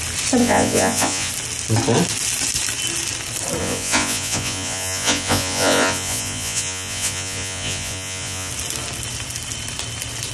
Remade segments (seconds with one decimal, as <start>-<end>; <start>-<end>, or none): 0.4-1.3; 3.6-8.5